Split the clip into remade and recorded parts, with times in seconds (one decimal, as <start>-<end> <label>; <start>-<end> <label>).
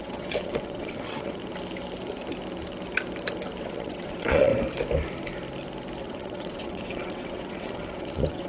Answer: 0.0-1.4 remade; 1.4-3.6 recorded; 3.6-4.5 remade; 4.5-6.0 recorded; 6.0-8.5 remade